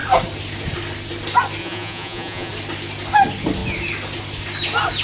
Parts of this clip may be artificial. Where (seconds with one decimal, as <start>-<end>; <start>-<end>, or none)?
1.6-2.5